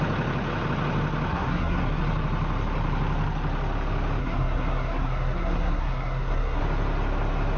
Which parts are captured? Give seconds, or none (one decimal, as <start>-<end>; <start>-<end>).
0.0-1.3; 2.0-4.2; 6.6-7.6